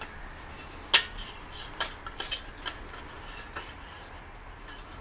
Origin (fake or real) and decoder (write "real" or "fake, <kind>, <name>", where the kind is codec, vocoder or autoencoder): real